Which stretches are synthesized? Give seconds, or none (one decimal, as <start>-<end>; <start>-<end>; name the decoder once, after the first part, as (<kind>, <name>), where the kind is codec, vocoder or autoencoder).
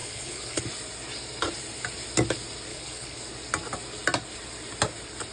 0.0-0.6 (codec, HILCodec); 2.7-3.2